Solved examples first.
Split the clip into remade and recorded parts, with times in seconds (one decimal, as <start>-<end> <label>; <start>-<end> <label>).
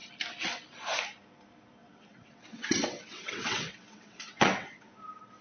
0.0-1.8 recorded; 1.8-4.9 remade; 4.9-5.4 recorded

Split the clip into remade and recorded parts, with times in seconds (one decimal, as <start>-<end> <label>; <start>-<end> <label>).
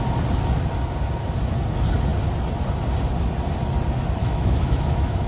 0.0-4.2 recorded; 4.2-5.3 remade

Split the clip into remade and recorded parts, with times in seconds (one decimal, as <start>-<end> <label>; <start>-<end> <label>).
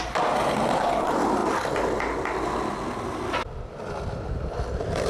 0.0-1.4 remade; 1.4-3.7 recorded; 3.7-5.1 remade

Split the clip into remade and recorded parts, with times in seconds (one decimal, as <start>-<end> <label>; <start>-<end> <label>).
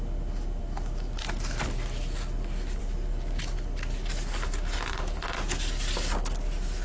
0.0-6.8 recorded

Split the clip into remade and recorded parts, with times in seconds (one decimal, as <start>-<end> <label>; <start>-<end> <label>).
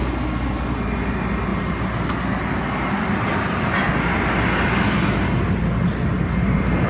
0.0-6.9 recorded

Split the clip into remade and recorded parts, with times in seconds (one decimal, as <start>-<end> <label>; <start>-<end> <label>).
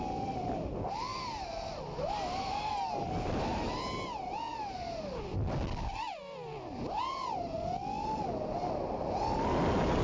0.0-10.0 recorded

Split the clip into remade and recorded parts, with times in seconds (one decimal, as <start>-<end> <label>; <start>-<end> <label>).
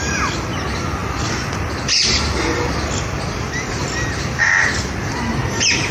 0.0-1.0 recorded; 1.0-3.7 remade; 3.7-5.9 recorded